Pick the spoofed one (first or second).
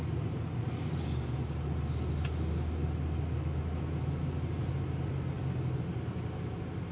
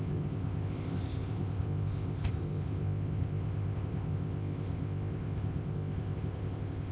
second